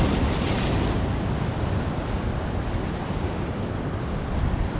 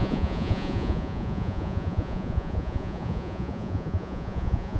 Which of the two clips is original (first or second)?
first